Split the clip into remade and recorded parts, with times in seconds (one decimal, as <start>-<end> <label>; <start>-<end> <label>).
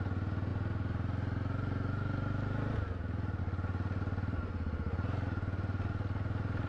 0.0-6.7 recorded